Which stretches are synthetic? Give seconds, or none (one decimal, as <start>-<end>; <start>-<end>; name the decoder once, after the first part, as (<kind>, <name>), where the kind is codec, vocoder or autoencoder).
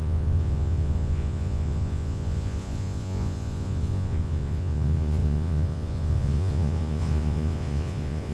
0.0-8.3 (vocoder, Vocos)